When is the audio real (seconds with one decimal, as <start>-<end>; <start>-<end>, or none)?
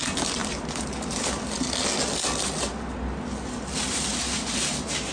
0.0-5.1